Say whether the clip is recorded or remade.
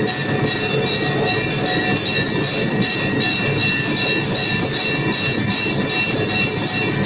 recorded